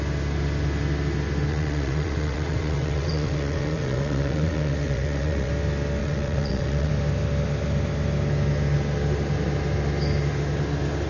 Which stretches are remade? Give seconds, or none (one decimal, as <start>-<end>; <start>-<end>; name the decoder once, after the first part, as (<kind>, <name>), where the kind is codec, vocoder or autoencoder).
1.5-5.5 (vocoder, WaveNeXt); 6.0-6.9